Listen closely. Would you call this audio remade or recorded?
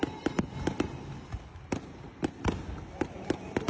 recorded